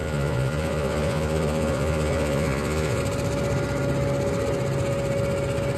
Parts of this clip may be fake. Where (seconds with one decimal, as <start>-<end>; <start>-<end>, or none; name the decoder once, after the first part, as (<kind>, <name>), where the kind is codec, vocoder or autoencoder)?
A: 0.0-3.0 (vocoder, Vocos)